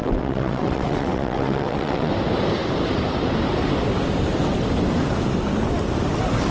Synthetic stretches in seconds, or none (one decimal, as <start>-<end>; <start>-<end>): 0.0-2.1